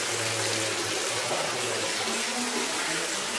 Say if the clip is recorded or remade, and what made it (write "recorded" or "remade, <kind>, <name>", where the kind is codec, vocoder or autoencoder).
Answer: recorded